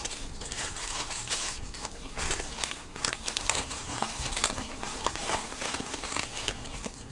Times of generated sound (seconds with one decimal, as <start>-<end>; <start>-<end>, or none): 0.0-7.1